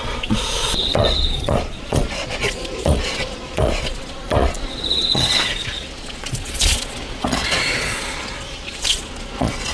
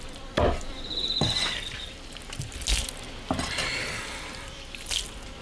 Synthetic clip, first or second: first